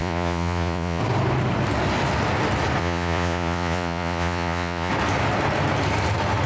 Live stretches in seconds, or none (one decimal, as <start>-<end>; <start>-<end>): 1.0-2.8; 4.9-6.5